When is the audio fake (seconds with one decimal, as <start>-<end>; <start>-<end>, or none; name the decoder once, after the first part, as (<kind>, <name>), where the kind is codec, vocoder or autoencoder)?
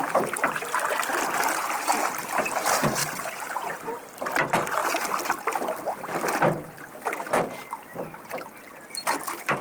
3.0-3.8 (vocoder, BigVGAN v2)